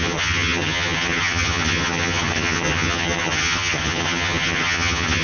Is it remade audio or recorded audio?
remade